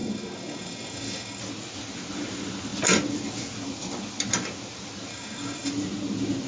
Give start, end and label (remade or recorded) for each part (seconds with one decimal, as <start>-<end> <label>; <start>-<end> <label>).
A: 0.0-1.4 remade; 1.4-5.1 recorded; 5.1-5.7 remade; 5.7-6.5 recorded

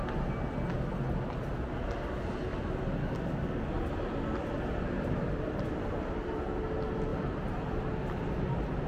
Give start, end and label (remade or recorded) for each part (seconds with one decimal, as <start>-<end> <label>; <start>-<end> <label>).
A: 0.0-3.0 recorded; 3.0-3.7 remade; 3.7-8.9 recorded

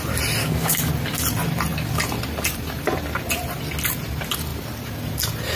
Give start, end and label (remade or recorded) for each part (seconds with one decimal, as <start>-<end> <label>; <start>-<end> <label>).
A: 0.0-0.4 recorded; 0.4-0.9 remade; 0.9-5.6 recorded

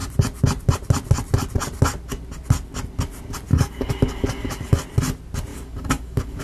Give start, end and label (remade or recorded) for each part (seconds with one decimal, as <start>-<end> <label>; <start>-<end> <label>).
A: 0.0-3.5 recorded; 3.5-4.8 remade; 4.8-5.5 recorded; 5.5-6.4 remade

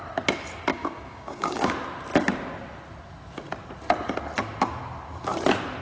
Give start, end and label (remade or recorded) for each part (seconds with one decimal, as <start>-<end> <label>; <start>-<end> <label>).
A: 0.0-0.7 recorded; 0.7-1.7 remade; 1.7-5.8 recorded

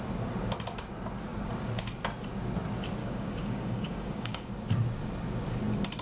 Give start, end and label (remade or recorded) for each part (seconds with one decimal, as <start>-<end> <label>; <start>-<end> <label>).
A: 0.0-3.0 recorded; 3.0-4.5 remade; 4.5-6.0 recorded